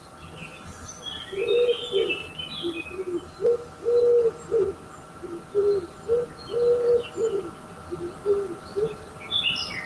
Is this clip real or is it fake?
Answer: real